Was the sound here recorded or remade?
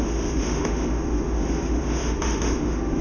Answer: remade